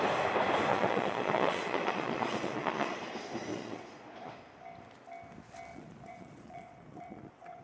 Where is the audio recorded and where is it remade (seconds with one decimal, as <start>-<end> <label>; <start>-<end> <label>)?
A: 0.0-0.7 recorded; 0.7-3.0 remade; 3.0-3.5 recorded; 3.5-4.3 remade; 4.3-5.7 recorded; 5.7-7.6 remade